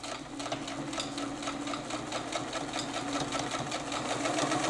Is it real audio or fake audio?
real